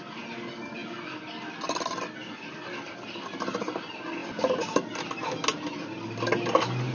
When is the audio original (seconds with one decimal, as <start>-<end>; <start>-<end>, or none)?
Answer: 0.0-6.9